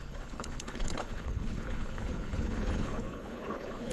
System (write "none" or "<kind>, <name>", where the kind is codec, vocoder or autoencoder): codec, HILCodec